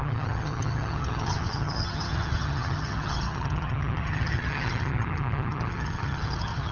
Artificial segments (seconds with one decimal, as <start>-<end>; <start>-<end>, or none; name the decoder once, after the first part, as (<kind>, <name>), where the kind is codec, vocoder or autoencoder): 0.0-6.7 (vocoder, HiFi-GAN)

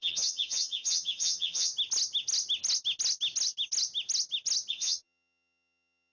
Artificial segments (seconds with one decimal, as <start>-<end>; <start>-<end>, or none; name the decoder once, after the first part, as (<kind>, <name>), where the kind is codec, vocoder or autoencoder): 0.0-1.7 (vocoder, HiFi-GAN); 4.7-6.1

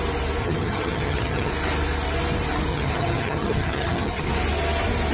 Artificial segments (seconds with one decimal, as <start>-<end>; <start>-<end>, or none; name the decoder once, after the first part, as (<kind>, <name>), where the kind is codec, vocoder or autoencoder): 0.4-1.5 (vocoder, HiFi-GAN); 2.7-4.2

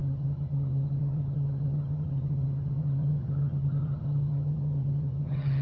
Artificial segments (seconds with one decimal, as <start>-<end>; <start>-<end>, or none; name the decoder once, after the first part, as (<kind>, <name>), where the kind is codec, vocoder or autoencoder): 0.0-5.6 (vocoder, HiFi-GAN)

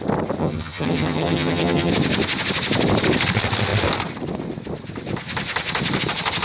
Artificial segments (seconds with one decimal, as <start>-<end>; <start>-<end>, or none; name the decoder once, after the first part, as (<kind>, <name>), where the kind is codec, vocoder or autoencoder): 0.4-1.9 (vocoder, HiFi-GAN)